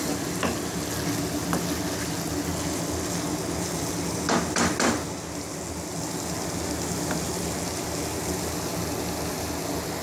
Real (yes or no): yes